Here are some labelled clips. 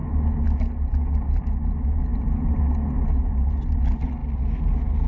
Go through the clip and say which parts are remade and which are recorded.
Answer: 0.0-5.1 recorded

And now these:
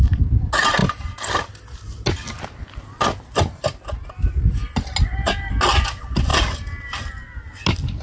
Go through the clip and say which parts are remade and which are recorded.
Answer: 0.0-8.0 recorded

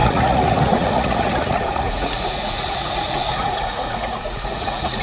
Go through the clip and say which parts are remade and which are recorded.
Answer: 0.0-5.0 remade

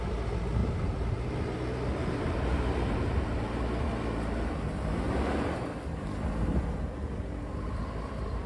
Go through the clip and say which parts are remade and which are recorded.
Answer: 0.0-0.6 recorded; 0.6-1.3 remade; 1.3-2.0 recorded; 2.0-3.8 remade; 3.8-8.5 recorded

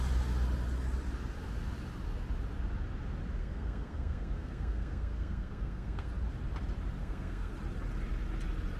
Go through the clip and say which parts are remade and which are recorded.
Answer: 0.0-3.4 recorded; 3.4-6.1 remade; 6.1-7.0 recorded; 7.0-7.5 remade; 7.5-8.8 recorded